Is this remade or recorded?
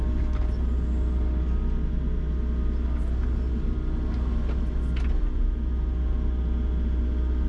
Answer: recorded